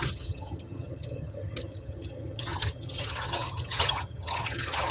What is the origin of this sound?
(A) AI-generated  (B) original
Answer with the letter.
A